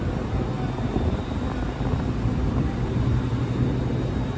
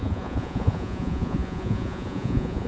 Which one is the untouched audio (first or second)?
first